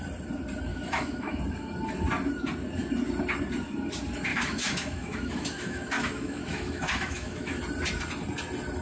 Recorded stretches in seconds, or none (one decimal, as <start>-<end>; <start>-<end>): 0.0-0.7; 1.4-4.3; 7.6-8.8